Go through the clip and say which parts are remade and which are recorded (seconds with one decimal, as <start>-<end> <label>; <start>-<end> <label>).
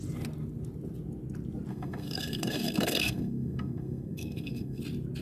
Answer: 0.0-1.7 recorded; 1.7-4.8 remade; 4.8-5.2 recorded